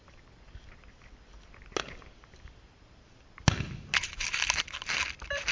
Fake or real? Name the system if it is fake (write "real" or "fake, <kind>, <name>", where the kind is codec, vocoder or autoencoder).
real